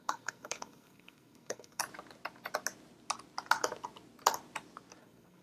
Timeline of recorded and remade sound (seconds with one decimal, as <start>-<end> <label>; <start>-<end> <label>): 0.0-1.8 remade; 1.8-5.0 recorded; 5.0-5.4 remade